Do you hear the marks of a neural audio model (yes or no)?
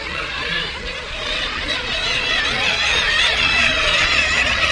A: yes